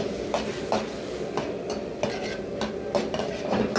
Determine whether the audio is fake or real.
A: real